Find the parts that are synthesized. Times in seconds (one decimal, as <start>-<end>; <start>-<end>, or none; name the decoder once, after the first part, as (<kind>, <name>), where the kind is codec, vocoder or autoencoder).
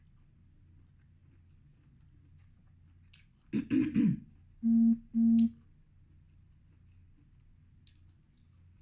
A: none